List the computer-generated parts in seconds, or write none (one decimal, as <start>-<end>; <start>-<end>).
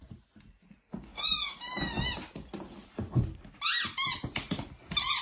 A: none